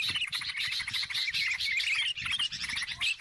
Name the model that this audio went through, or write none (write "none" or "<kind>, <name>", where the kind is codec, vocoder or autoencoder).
none